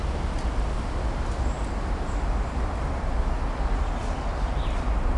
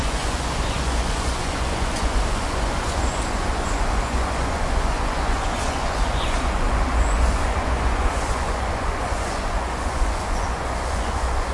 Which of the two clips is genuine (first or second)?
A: first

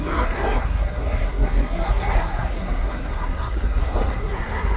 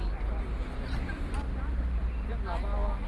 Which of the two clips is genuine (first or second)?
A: second